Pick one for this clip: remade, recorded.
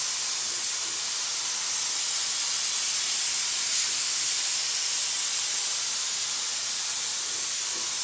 recorded